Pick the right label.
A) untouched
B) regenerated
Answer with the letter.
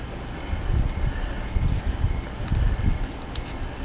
A